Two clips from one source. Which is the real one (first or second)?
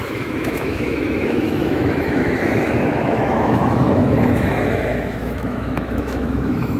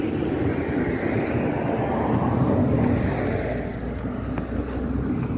second